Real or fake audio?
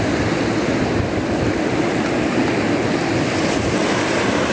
real